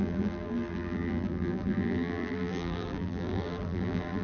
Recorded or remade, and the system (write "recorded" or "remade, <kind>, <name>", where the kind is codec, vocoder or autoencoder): remade, vocoder, BigVGAN v2